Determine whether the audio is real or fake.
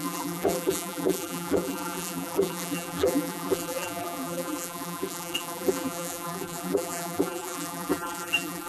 fake